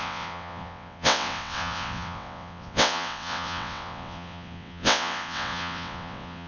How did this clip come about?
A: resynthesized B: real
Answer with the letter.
A